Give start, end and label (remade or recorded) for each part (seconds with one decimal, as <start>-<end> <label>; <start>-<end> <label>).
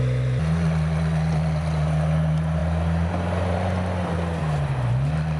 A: 0.0-5.4 recorded